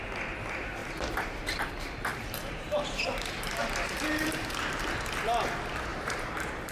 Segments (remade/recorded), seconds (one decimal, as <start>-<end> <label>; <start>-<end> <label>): 0.0-0.8 recorded; 0.8-1.7 remade; 1.7-2.1 recorded; 2.1-4.8 remade; 4.8-5.9 recorded; 5.9-6.7 remade